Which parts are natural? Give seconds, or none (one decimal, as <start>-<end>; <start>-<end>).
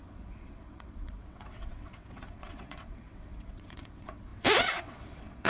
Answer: none